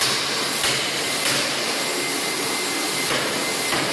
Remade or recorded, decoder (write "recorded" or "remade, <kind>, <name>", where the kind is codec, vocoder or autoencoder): recorded